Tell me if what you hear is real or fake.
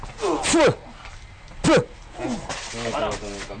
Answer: real